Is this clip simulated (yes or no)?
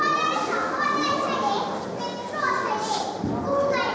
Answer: no